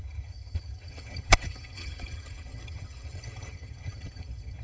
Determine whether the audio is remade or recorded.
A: remade